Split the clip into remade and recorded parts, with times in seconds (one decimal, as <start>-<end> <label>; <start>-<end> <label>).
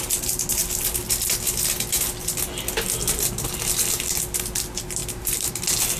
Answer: 0.0-5.0 recorded; 5.0-5.5 remade; 5.5-6.0 recorded